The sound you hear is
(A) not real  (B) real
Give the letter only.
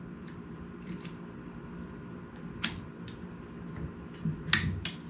B